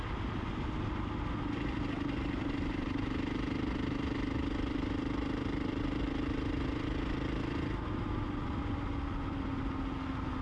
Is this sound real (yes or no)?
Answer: yes